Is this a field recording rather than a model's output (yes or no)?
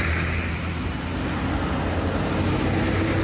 yes